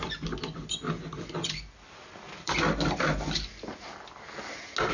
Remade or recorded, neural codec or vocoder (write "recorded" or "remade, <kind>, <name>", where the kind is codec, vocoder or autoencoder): recorded